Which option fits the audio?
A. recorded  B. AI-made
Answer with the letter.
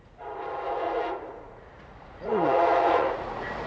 B